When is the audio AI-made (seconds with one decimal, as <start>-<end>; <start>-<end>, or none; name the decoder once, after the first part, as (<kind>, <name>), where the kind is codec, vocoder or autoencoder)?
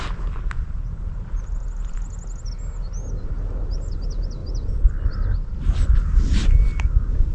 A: none